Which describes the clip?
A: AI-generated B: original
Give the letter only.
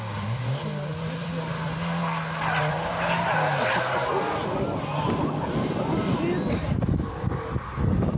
B